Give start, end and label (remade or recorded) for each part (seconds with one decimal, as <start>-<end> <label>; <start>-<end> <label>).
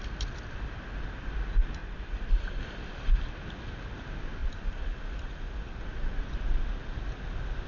0.0-1.8 recorded; 1.8-2.6 remade; 2.6-4.4 recorded; 4.4-5.8 remade; 5.8-7.7 recorded